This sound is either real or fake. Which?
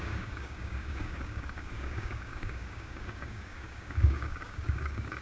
fake